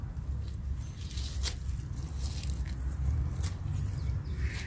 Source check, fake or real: real